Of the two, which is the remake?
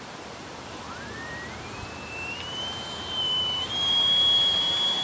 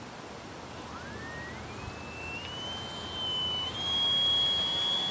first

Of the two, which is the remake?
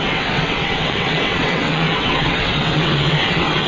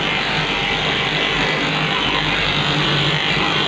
first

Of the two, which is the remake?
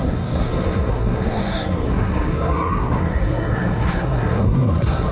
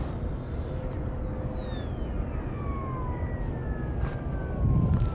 first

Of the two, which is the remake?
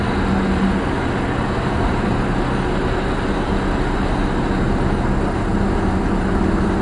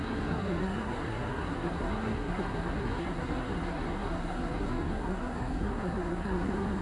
second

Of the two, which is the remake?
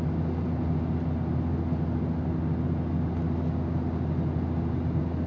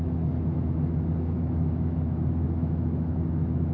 second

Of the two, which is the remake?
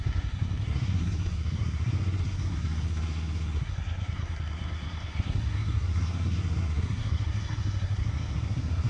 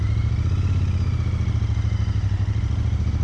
first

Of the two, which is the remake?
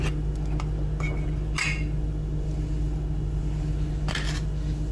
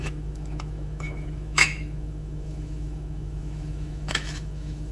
second